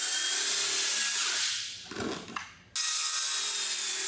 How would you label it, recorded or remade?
recorded